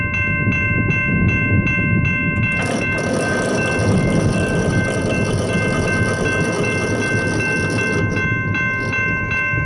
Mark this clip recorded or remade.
recorded